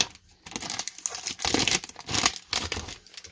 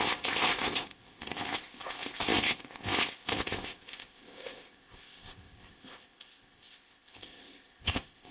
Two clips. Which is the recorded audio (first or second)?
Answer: first